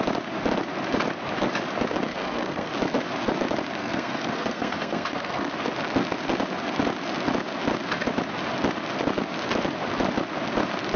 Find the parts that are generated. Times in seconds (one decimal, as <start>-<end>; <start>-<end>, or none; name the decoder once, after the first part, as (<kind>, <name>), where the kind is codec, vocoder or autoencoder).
2.1-2.7 (codec, SNAC); 3.8-5.5